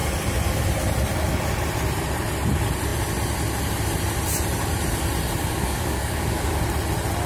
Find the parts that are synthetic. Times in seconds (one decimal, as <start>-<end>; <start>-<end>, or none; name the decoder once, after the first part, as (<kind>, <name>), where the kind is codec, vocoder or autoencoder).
5.4-6.6 (codec, DAC)